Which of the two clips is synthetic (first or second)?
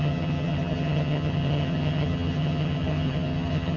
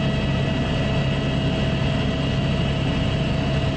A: first